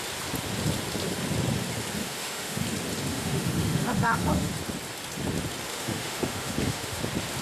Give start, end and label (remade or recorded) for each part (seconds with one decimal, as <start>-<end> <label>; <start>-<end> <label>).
0.0-2.0 recorded; 2.0-2.6 remade; 2.6-3.1 recorded; 3.1-4.5 remade; 4.5-5.7 recorded; 5.7-7.0 remade; 7.0-7.4 recorded